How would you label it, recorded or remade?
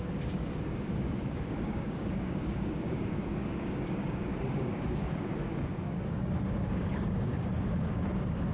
remade